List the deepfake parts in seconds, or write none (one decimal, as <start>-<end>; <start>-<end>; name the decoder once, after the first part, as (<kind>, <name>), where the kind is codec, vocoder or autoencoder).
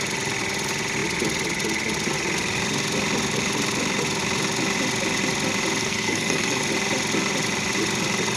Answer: 5.8-6.6 (codec, SNAC)